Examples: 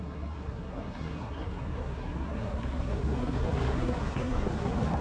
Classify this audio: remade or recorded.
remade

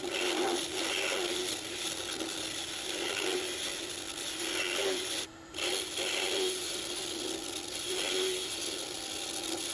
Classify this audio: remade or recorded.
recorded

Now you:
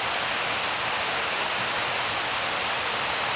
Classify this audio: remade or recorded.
recorded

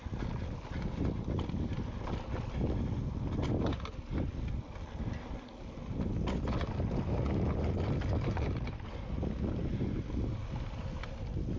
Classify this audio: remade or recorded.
recorded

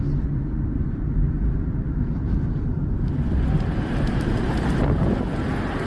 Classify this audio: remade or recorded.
recorded